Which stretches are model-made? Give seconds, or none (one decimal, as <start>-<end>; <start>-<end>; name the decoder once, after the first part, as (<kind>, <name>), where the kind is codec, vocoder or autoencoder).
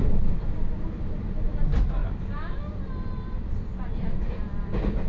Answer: none